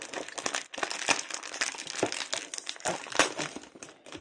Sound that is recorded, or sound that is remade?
recorded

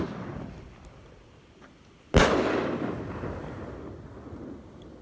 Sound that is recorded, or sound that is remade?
recorded